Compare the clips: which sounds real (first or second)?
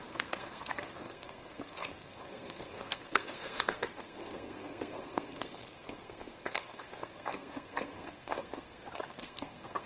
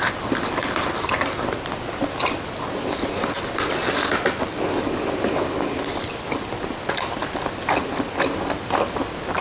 second